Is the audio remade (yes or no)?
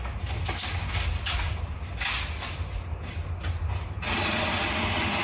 no